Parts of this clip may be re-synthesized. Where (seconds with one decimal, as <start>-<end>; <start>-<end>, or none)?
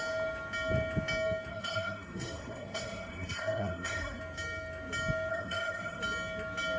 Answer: 1.5-4.2; 5.3-6.0